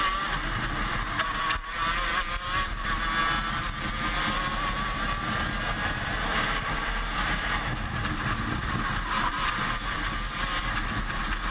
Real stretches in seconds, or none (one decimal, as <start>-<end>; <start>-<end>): 0.0-11.5